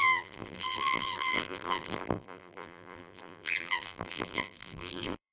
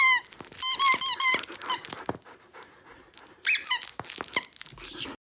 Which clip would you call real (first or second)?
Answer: second